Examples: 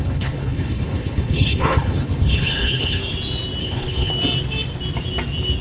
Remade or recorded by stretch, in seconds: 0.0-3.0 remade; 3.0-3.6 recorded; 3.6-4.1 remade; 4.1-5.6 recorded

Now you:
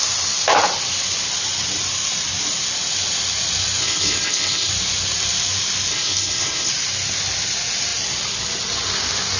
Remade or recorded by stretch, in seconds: 0.0-3.8 recorded; 3.8-4.7 remade; 4.7-5.9 recorded; 5.9-6.7 remade; 6.7-9.4 recorded

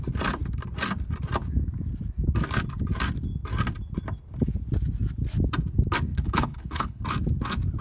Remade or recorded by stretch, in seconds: 0.0-6.1 recorded; 6.1-7.0 remade; 7.0-7.8 recorded

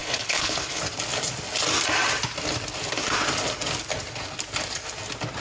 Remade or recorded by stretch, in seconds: 0.0-0.8 remade; 0.8-5.4 recorded

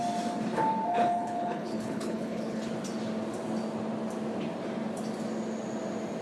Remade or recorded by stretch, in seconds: 0.0-0.9 recorded; 0.9-2.7 remade; 2.7-6.2 recorded

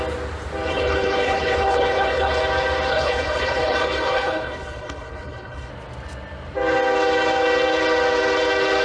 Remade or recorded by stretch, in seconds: 0.0-0.7 recorded; 0.7-2.4 remade; 2.4-2.9 recorded; 2.9-5.7 remade; 5.7-8.8 recorded

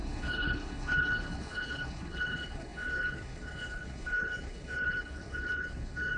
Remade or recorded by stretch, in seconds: 0.0-6.2 remade